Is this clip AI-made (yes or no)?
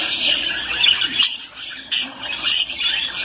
yes